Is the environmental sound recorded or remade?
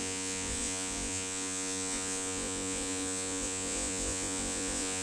remade